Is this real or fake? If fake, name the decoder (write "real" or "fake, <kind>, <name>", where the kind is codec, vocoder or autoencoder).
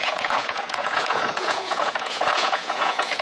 fake, vocoder, Vocos